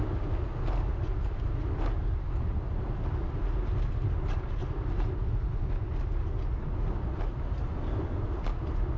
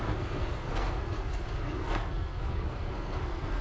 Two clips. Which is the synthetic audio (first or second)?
second